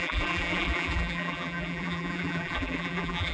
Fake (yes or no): yes